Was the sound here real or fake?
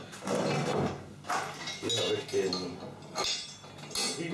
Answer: real